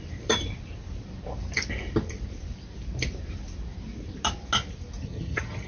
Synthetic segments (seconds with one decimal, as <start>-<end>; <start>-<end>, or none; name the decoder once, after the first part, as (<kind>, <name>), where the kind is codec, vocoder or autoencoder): 5.0-5.7 (vocoder, HiFi-GAN)